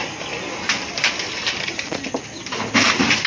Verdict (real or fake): real